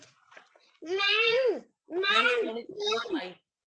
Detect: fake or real fake